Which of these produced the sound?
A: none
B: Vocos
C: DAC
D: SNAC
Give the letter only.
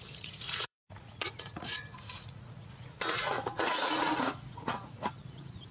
B